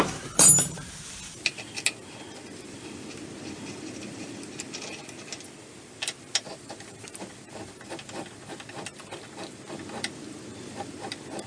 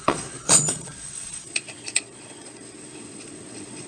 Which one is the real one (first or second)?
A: first